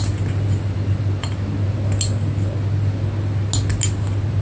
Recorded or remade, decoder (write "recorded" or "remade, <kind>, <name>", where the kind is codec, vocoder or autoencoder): recorded